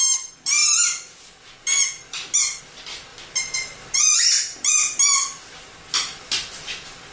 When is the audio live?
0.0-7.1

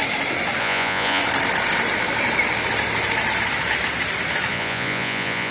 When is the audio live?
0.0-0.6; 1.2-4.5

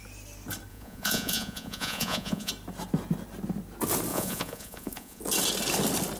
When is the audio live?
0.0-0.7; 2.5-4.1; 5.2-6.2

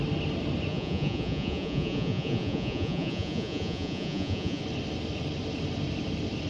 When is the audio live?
0.0-0.7; 4.6-6.5

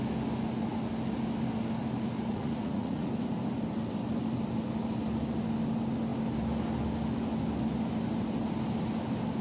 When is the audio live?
0.0-2.3; 3.1-9.4

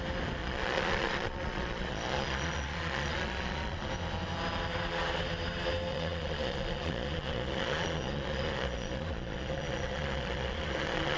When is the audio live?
0.0-0.4; 3.9-5.9

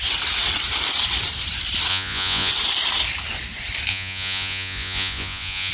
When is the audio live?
0.0-1.9; 2.5-3.9

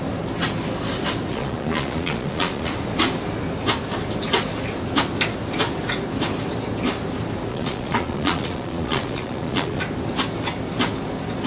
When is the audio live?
0.0-1.3; 2.7-7.5; 9.8-11.5